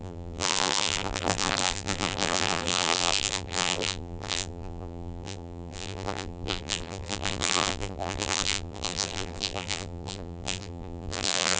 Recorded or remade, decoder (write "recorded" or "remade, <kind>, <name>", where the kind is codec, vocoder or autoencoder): remade, vocoder, BigVGAN v2